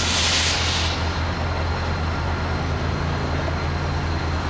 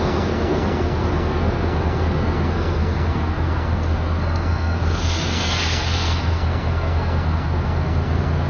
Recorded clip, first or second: first